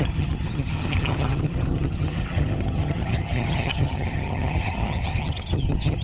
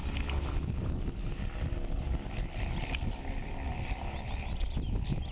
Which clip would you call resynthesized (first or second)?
first